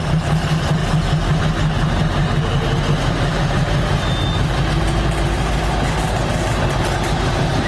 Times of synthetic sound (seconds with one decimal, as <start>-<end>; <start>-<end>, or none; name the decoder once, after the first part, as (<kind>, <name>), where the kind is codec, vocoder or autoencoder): none